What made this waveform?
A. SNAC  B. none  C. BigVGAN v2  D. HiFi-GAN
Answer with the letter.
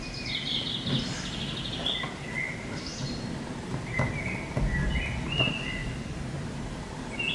B